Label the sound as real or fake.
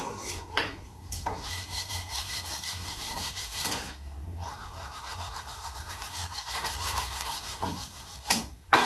fake